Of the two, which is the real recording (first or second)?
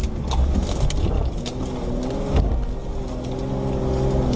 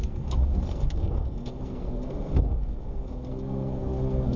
first